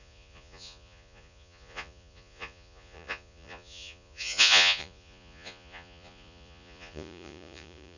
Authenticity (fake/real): fake